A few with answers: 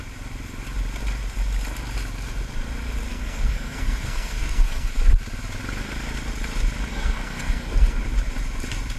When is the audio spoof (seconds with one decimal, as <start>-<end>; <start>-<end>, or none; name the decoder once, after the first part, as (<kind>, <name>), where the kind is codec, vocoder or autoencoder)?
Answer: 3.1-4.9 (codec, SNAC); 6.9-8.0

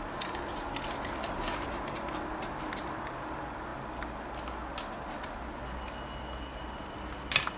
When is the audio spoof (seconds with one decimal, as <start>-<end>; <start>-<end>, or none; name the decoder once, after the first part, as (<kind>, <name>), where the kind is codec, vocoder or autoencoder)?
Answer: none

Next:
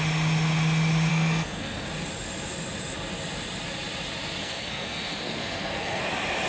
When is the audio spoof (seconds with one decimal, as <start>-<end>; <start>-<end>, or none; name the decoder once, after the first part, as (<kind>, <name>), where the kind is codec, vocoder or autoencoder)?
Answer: 1.1-1.9 (codec, SNAC); 4.4-6.0

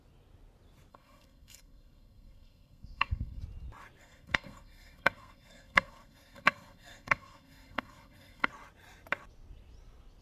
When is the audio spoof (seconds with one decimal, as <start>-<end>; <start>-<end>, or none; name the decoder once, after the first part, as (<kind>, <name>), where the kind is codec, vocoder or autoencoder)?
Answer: 0.9-3.4 (codec, SNAC); 4.0-8.5